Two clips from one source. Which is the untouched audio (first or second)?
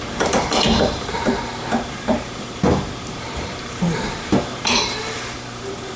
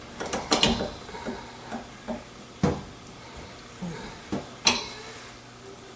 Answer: second